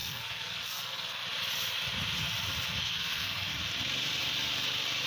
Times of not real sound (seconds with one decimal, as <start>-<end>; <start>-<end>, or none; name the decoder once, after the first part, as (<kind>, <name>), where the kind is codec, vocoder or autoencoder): 0.0-1.2 (codec, SNAC); 2.8-3.5